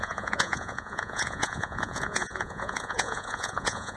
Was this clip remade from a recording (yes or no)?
yes